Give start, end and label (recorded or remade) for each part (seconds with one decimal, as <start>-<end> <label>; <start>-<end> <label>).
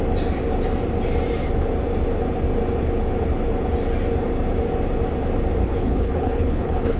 0.0-5.6 recorded; 5.6-7.0 remade